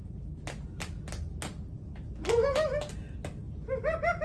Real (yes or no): yes